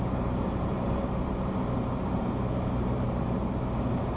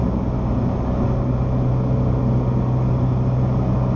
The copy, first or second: first